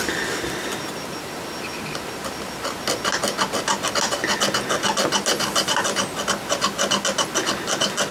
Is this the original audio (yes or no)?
yes